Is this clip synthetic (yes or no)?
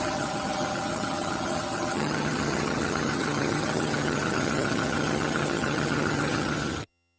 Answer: yes